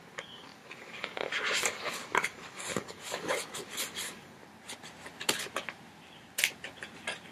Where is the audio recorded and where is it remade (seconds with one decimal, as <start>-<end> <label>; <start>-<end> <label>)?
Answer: 0.0-4.4 remade; 4.4-7.3 recorded